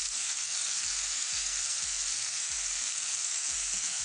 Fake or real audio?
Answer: fake